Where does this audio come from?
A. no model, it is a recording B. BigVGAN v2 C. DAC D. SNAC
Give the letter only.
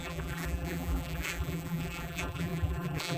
B